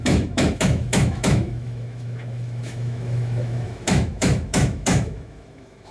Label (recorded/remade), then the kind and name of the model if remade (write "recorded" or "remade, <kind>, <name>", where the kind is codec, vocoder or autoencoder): remade, autoencoder, DAC-VAE